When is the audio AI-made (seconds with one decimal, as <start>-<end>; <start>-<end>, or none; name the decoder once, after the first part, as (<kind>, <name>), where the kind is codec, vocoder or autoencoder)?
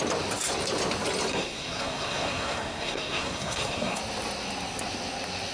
1.3-4.0 (codec, SNAC)